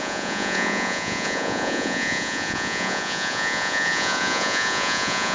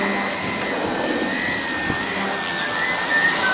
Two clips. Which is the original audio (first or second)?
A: second